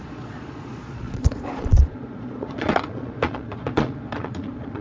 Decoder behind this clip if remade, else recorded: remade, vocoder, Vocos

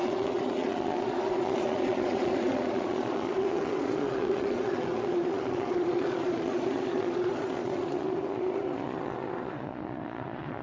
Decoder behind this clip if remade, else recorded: remade, vocoder, Vocos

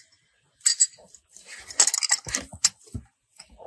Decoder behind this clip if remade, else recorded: recorded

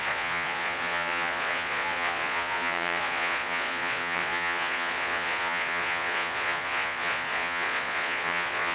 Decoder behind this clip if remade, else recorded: remade, vocoder, Vocos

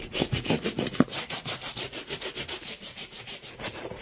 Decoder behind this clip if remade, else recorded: remade, vocoder, Vocos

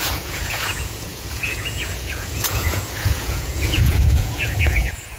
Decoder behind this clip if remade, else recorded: remade, vocoder, Vocos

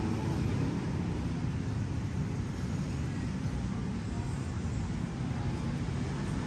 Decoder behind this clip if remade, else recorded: recorded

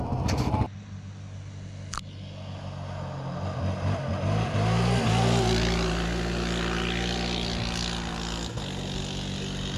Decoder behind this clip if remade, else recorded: recorded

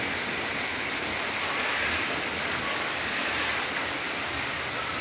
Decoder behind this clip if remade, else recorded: recorded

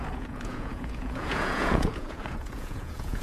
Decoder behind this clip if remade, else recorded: remade, vocoder, Vocos